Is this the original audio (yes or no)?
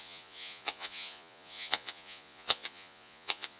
no